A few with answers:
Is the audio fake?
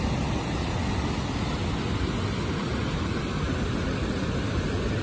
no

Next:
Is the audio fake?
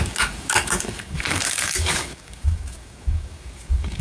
yes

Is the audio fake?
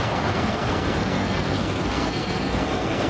yes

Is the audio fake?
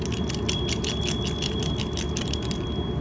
no